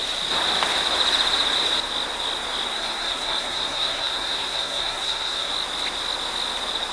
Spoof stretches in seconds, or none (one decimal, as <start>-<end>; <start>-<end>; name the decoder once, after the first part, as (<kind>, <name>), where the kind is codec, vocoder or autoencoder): 2.7-5.5 (codec, SNAC)